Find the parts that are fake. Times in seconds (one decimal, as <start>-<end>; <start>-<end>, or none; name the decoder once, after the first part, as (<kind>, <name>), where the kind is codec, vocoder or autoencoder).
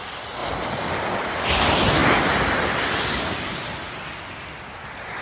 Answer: none